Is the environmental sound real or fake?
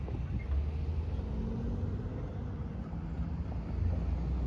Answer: real